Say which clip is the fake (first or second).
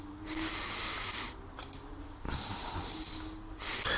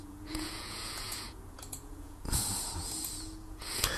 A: second